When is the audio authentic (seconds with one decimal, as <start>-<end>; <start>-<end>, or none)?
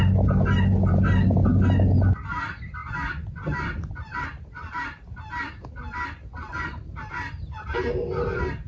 0.0-8.7